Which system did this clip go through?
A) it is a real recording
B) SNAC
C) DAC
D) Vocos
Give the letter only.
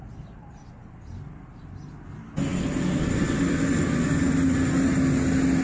A